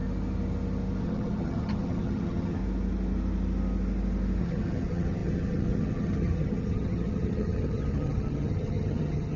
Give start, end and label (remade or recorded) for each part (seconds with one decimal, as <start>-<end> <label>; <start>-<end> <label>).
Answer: 0.0-1.0 recorded; 1.0-2.6 remade; 2.6-4.4 recorded; 4.4-9.4 remade